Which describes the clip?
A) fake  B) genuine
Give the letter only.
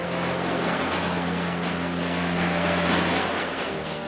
A